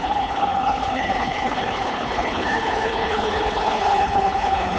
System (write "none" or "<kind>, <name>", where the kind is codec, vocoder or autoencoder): codec, HILCodec